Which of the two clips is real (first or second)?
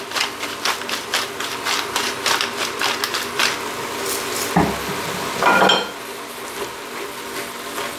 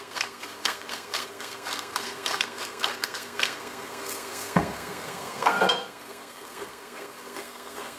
first